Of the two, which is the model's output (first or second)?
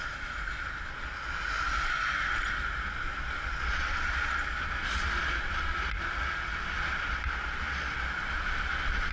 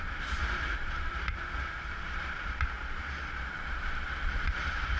second